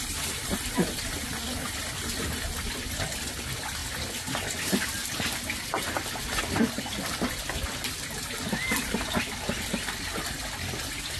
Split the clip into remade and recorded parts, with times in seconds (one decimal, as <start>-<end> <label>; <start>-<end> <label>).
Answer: 0.0-11.2 recorded